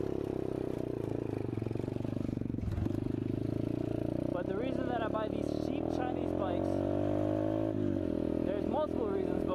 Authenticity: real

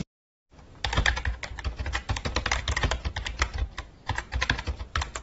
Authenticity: real